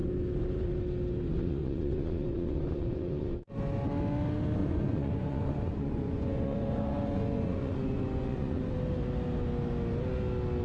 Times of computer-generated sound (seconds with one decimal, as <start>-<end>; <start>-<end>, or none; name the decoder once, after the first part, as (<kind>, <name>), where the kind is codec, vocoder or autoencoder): 1.3-3.5 (vocoder, Vocos); 4.6-8.6